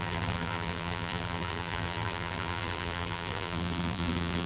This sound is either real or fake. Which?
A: fake